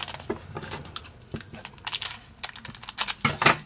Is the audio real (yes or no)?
yes